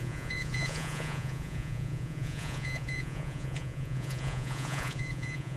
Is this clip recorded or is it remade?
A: remade